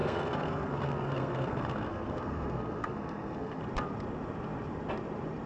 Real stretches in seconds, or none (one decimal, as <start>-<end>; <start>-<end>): 3.6-5.5